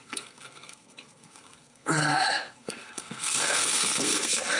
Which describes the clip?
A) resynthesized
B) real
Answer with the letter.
A